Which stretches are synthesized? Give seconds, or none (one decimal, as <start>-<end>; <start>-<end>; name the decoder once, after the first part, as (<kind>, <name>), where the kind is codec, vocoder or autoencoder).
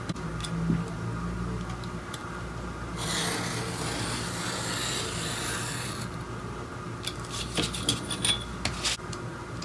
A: none